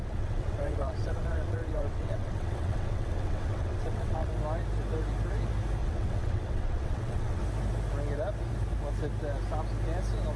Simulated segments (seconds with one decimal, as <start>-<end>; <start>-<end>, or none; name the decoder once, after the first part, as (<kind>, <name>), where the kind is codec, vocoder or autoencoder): 0.0-4.3 (vocoder, WaveNeXt); 5.8-7.4